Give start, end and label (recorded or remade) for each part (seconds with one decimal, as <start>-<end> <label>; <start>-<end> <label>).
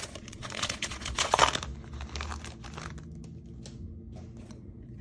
0.0-1.4 remade; 1.4-4.4 recorded; 4.4-5.0 remade